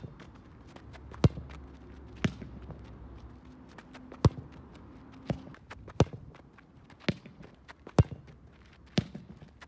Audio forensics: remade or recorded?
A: recorded